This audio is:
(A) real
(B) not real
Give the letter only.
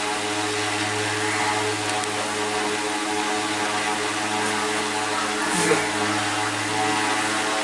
A